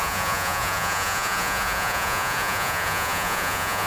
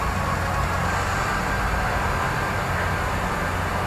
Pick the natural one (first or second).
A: second